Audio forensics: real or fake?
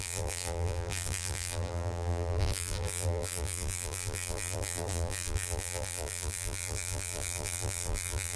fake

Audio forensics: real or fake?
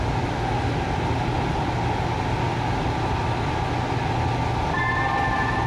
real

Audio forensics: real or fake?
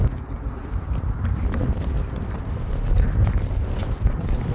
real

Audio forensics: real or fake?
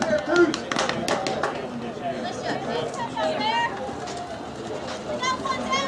real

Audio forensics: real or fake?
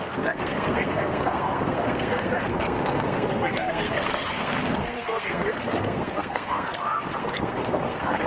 fake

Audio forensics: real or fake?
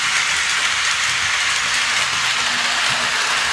real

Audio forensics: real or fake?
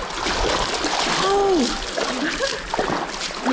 real